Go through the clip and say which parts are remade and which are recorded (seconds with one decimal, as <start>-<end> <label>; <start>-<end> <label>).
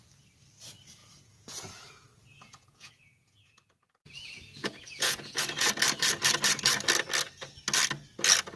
0.0-1.0 recorded; 1.0-5.7 remade; 5.7-8.6 recorded